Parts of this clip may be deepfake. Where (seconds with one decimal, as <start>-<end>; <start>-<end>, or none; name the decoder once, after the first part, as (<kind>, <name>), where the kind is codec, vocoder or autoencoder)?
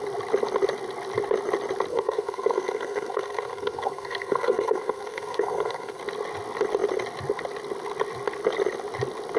1.9-6.0 (codec, SNAC)